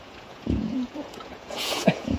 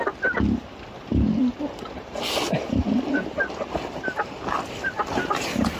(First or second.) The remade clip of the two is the first